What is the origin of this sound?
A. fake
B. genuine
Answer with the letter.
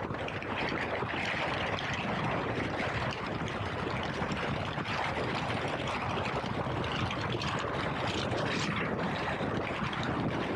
A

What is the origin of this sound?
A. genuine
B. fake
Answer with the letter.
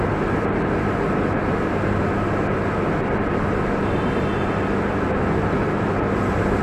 A